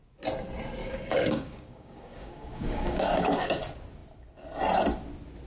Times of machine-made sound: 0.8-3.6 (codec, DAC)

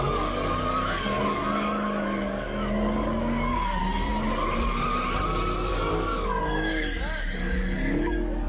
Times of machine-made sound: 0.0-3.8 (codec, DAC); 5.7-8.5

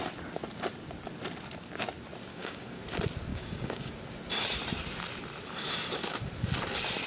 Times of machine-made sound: 2.3-2.8 (codec, DAC); 3.3-3.9